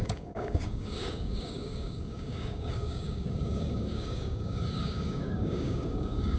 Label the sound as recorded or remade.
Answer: remade